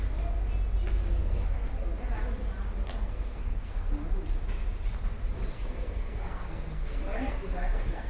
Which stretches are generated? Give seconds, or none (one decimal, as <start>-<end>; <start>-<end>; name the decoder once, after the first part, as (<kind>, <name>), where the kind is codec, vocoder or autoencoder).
1.2-1.7 (codec, SNAC); 3.0-3.9; 5.5-8.1